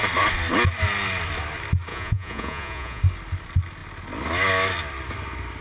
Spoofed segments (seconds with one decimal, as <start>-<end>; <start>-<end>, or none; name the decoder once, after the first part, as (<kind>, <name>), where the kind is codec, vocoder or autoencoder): 1.9-3.0 (vocoder, Vocos)